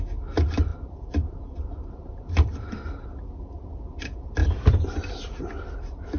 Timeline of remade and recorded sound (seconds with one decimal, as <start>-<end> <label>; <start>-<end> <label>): 0.0-0.7 recorded; 0.7-2.8 remade; 2.8-4.4 recorded; 4.4-6.2 remade